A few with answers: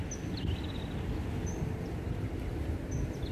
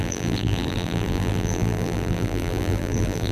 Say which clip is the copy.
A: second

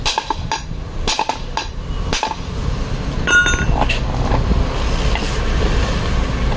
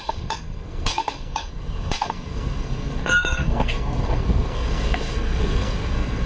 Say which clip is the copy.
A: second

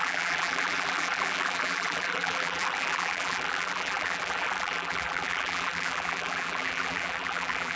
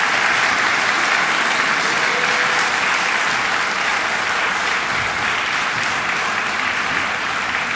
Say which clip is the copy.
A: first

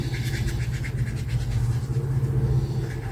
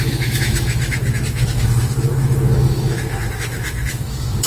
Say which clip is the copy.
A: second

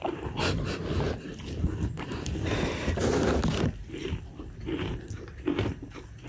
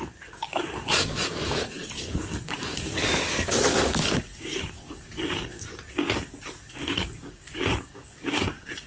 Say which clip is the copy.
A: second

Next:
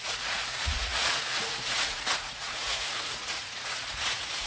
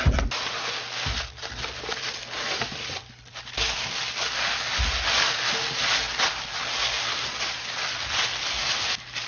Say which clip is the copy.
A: first